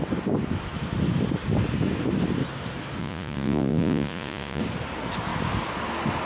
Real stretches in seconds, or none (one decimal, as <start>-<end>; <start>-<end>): 0.0-3.0; 4.6-6.2